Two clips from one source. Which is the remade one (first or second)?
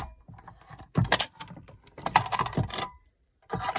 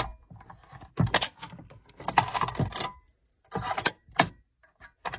first